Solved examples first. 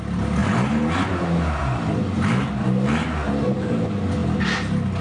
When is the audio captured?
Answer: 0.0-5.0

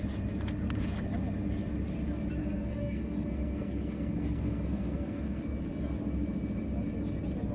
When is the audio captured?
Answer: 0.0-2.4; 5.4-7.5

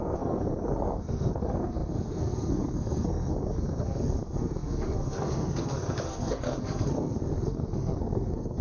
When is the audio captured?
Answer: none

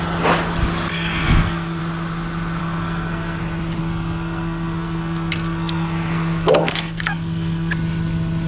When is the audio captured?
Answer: 0.0-0.9; 1.8-2.6; 3.4-3.8; 7.7-8.5

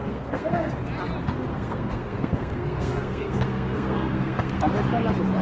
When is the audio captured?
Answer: 0.7-1.5; 4.7-5.4